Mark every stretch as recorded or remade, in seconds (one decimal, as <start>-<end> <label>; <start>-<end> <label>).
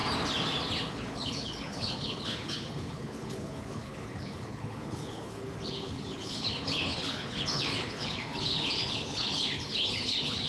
0.0-0.9 recorded; 0.9-10.5 remade